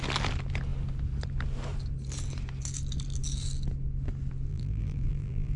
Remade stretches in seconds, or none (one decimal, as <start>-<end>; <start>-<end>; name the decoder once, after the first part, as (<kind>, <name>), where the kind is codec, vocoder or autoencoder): 4.5-5.6 (vocoder, BigVGAN v2)